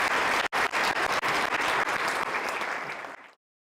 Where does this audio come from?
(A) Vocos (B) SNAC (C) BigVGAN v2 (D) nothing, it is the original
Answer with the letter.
D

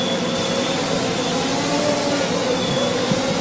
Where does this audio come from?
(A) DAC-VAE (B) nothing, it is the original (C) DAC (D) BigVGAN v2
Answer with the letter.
B